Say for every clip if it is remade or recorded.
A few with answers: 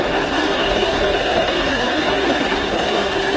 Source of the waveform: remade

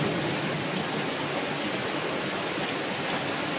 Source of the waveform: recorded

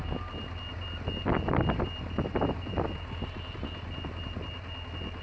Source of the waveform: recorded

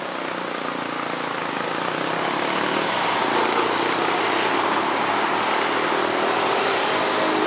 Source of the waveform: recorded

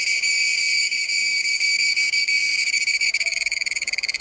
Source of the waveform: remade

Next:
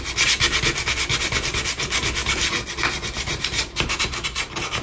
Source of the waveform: recorded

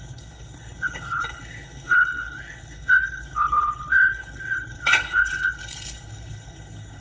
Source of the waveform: remade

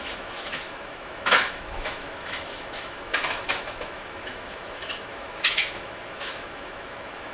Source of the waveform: remade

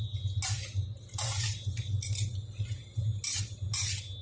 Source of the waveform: recorded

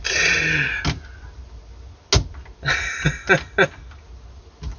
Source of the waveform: recorded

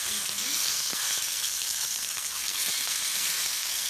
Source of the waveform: remade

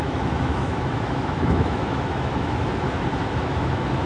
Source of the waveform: remade